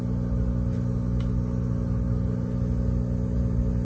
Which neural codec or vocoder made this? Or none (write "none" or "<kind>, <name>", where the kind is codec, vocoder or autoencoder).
none